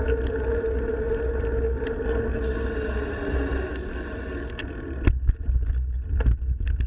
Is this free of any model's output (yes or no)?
yes